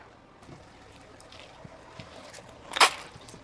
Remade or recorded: remade